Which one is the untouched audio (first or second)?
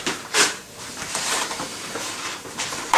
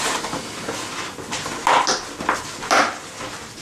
second